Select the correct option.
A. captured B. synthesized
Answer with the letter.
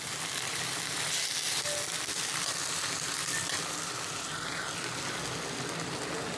A